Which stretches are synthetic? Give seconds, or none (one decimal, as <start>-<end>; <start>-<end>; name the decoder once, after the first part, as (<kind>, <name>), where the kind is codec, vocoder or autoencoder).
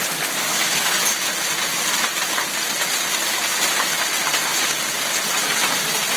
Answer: 0.5-1.0 (autoencoder, DAC-VAE)